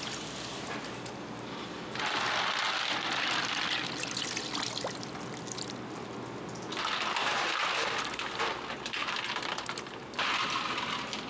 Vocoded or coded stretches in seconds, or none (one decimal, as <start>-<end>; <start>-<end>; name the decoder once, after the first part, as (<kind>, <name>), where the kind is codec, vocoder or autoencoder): none